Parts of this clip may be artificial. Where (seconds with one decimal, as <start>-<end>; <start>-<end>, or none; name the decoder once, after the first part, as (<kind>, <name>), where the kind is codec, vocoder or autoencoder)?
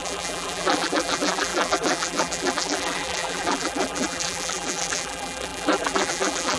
0.0-6.6 (vocoder, BigVGAN v2)